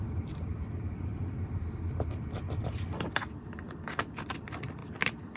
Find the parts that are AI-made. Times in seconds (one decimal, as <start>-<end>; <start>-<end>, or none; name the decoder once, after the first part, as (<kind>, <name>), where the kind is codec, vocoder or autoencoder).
0.0-5.4 (vocoder, BigVGAN v2)